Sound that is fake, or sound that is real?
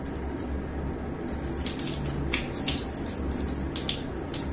real